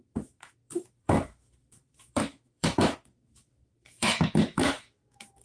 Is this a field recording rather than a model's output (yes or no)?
no